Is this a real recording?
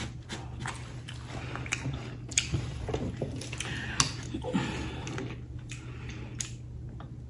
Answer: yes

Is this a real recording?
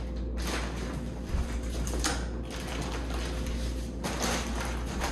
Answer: yes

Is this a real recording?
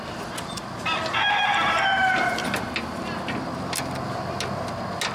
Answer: yes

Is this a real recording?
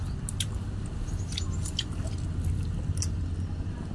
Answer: yes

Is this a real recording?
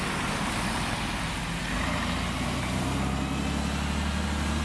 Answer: yes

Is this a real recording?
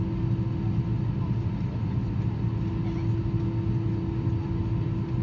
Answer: yes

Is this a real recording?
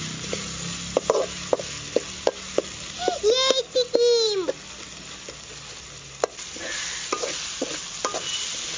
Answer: yes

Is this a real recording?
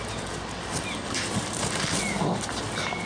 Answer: yes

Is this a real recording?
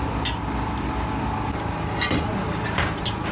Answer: yes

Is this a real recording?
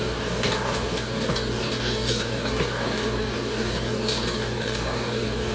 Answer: no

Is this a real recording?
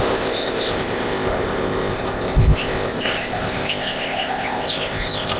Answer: no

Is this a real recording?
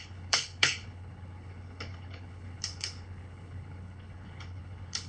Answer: no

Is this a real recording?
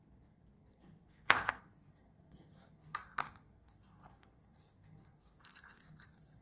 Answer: no